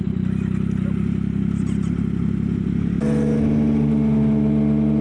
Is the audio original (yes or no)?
yes